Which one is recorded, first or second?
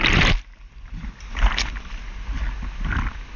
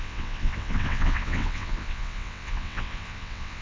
first